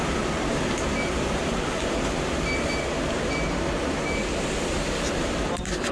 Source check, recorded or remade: recorded